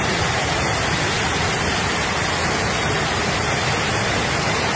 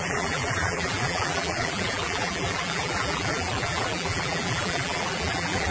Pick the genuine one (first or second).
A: first